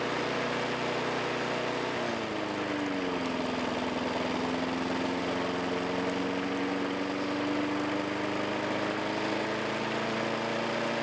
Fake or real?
real